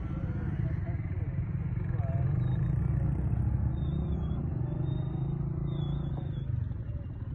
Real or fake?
real